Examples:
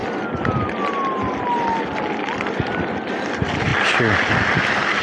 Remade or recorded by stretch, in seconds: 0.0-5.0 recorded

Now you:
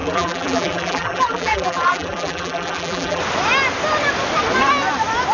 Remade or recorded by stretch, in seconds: 0.0-3.2 remade; 3.2-5.3 recorded

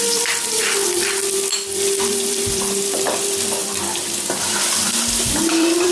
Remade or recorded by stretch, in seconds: 0.0-5.9 remade

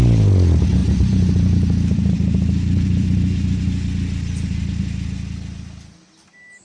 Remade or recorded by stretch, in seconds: 0.0-0.8 recorded; 0.8-3.6 remade; 3.6-6.6 recorded

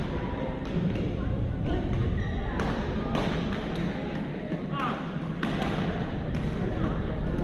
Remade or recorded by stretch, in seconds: 0.0-7.4 recorded

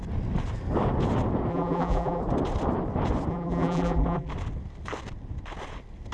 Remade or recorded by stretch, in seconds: 0.0-1.5 recorded; 1.5-2.2 remade; 2.2-3.3 recorded; 3.3-4.3 remade; 4.3-6.1 recorded

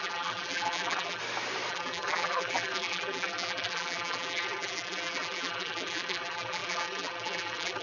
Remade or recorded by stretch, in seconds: 0.0-1.2 remade; 1.2-1.7 recorded; 1.7-7.8 remade

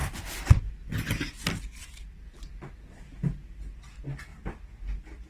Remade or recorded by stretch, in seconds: 0.0-1.8 recorded; 1.8-2.5 remade; 2.5-5.3 recorded